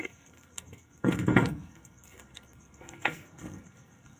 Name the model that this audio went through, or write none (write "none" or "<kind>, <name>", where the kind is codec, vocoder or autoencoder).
codec, SNAC